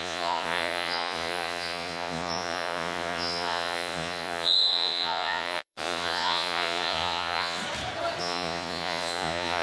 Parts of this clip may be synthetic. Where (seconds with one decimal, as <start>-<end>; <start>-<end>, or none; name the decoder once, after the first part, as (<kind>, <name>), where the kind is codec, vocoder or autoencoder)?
0.0-7.6 (vocoder, Vocos); 8.2-9.6